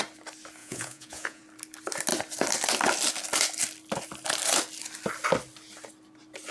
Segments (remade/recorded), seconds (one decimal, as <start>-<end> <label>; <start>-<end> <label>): 0.0-0.6 recorded; 0.6-1.4 remade; 1.4-6.5 recorded